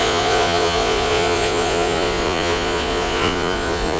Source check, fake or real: fake